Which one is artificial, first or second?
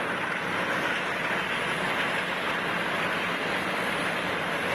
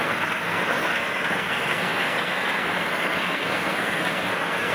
second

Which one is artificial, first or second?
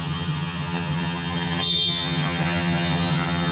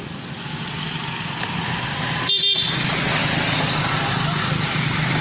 first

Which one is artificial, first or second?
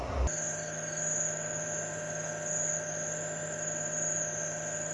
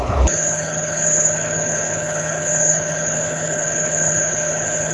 second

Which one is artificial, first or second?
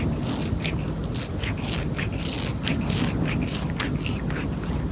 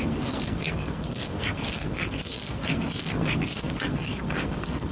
second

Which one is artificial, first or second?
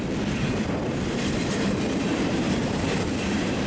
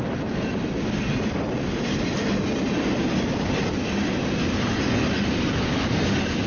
first